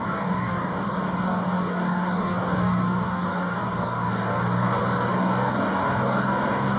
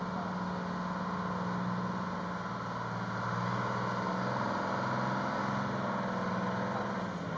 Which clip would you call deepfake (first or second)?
first